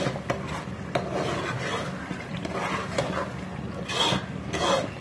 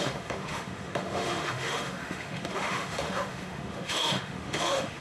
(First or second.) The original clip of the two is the first